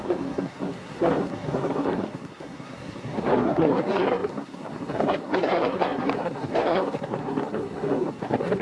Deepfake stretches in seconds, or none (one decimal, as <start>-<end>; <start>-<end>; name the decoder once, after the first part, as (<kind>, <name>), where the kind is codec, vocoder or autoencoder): 0.0-8.6 (codec, SNAC)